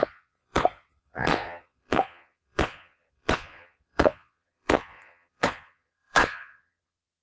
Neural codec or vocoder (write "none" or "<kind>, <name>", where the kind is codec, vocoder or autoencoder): vocoder, Vocos